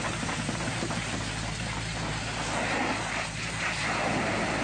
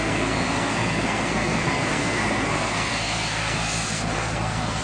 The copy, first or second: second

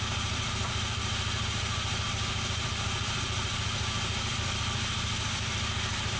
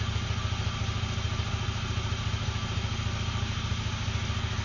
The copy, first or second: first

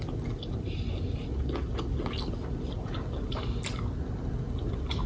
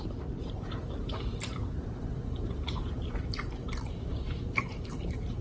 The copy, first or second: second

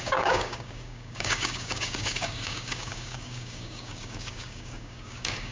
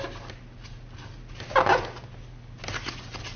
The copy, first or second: first